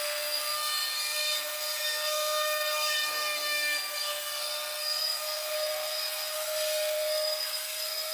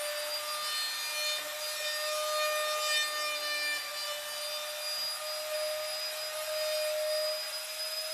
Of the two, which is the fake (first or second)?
first